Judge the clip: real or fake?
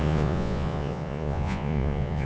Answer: fake